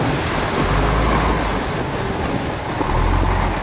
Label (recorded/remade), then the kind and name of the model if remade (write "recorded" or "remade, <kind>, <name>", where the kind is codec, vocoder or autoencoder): recorded